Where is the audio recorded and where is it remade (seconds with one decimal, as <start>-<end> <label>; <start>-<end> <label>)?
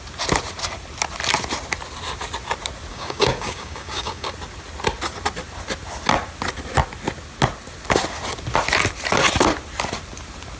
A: 0.0-2.9 recorded; 2.9-4.3 remade; 4.3-10.6 recorded